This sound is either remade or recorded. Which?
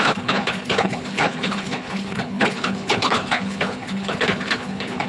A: remade